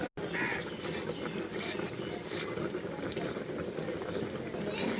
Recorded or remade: recorded